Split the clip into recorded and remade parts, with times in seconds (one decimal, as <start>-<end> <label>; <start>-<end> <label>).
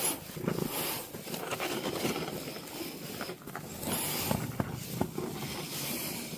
0.0-6.4 recorded